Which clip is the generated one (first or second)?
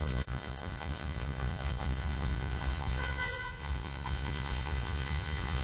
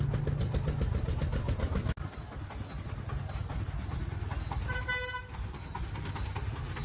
first